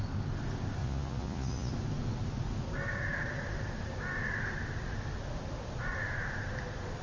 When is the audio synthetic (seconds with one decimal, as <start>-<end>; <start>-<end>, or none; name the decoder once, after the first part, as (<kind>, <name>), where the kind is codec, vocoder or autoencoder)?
0.8-1.7 (vocoder, Vocos)